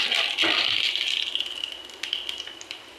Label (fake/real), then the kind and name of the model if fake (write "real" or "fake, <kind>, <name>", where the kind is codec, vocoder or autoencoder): real